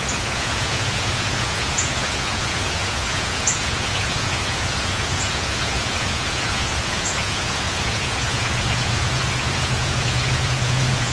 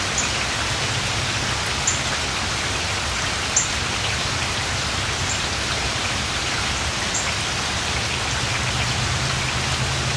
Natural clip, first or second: second